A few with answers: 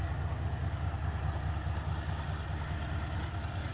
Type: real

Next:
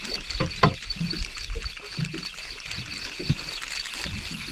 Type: real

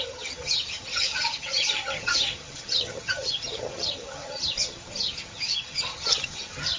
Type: fake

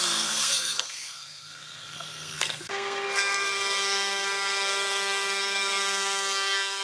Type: fake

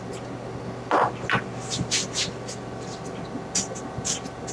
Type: real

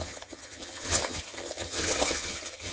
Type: fake